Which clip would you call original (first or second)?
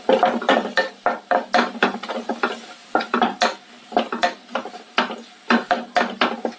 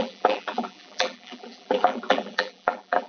first